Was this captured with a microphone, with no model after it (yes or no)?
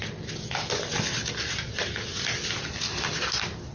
yes